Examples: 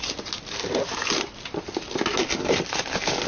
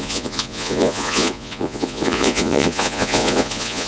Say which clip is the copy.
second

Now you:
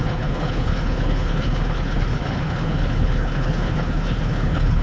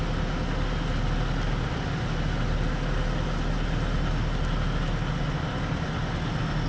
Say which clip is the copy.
first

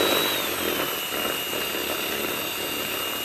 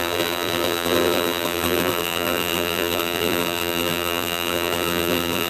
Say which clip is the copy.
second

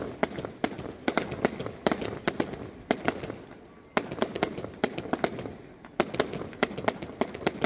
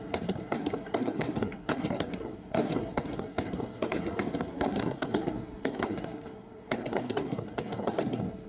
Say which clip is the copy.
second